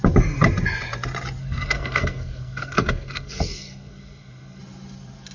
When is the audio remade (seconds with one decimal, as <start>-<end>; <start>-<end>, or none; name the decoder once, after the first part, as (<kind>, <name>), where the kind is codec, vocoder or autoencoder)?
1.4-4.6 (codec, SNAC)